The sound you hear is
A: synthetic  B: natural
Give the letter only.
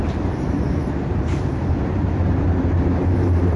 A